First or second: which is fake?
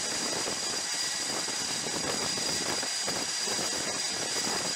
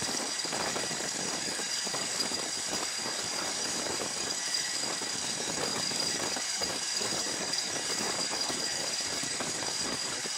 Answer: second